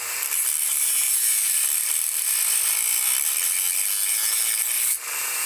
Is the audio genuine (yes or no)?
no